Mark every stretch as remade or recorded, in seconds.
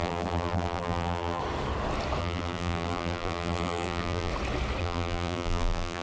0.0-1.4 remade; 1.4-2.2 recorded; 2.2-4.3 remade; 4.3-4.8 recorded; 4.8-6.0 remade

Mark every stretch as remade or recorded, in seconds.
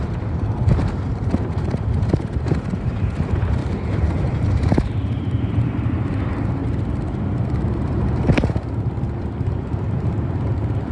0.0-3.6 remade; 3.6-4.1 recorded; 4.1-6.6 remade; 6.6-7.2 recorded; 7.2-10.9 remade